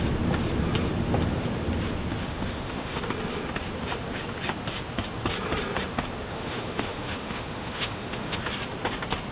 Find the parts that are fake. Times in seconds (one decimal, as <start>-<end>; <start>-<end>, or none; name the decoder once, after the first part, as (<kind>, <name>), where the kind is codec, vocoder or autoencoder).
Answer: 2.2-3.0 (autoencoder, DAC-VAE); 6.3-8.4